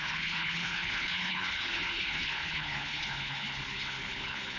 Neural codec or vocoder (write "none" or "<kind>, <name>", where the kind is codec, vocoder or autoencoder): codec, HILCodec